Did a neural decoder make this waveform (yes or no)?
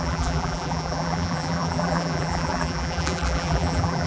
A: yes